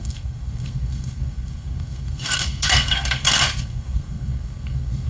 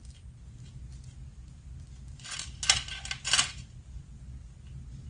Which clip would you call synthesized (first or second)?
first